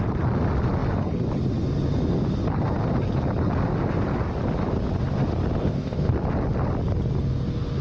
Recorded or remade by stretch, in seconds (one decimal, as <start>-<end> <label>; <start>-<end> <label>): 0.0-5.6 recorded; 5.6-6.1 remade; 6.1-7.8 recorded